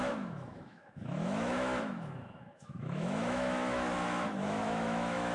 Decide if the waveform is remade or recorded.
remade